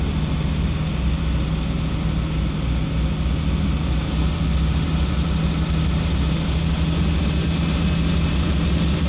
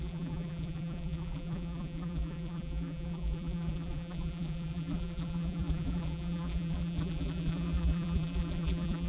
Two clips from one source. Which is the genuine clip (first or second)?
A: first